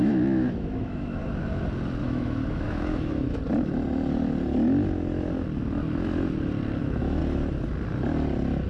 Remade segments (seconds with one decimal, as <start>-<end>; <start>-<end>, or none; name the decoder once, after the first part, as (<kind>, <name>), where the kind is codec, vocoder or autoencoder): 0.0-1.2 (autoencoder, DAC-VAE); 2.0-3.4; 6.8-7.2